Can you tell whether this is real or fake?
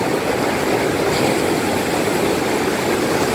real